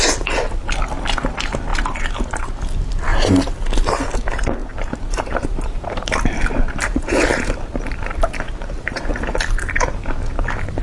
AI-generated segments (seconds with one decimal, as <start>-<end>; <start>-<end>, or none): 3.1-3.7; 4.6-9.1